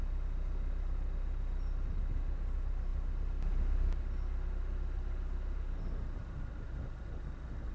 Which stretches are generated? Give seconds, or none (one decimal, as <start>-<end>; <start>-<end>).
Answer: none